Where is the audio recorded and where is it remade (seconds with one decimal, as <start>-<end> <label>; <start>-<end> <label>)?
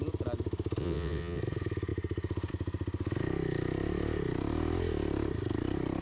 0.0-0.8 recorded; 0.8-1.4 remade; 1.4-6.0 recorded